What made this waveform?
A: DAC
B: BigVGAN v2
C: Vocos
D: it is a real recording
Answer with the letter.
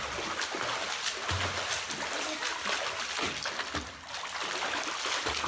D